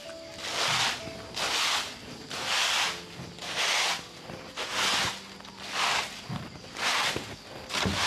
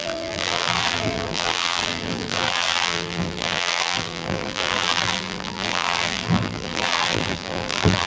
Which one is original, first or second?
first